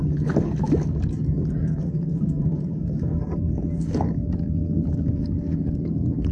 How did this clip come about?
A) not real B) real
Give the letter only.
A